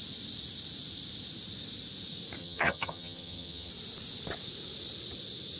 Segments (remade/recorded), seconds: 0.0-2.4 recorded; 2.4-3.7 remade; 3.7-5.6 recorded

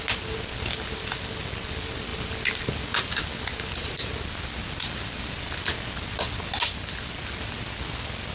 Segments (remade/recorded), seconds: 0.0-8.3 recorded